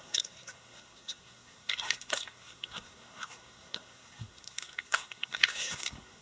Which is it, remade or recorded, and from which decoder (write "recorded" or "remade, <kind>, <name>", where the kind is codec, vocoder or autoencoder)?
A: remade, codec, SNAC